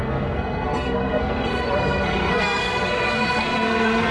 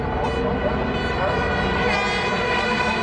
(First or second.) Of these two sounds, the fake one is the first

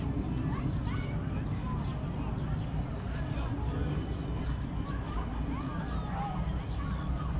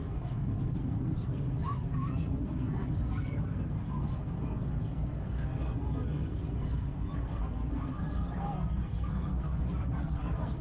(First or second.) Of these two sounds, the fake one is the second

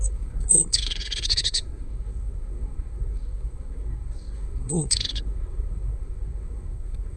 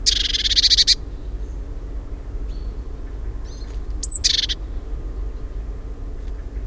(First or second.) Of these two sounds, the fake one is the first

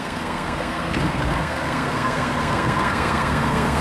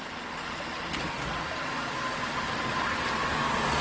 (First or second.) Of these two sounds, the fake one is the first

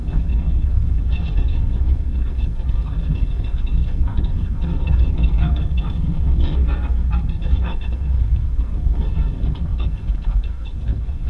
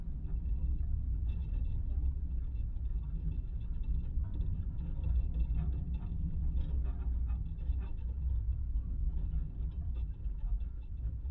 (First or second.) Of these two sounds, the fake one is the first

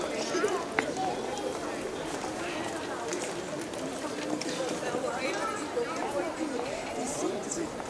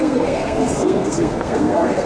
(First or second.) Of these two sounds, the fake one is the second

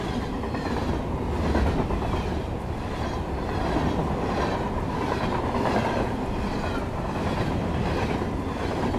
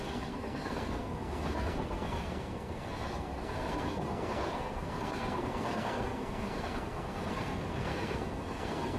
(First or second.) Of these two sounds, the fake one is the second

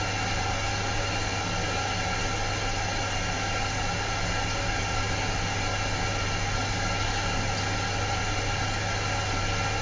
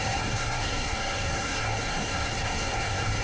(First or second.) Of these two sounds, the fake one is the second